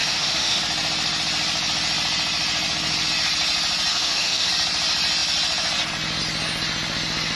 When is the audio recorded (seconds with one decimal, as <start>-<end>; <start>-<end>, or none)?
0.6-3.9; 4.5-7.4